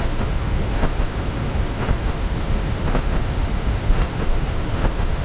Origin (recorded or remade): remade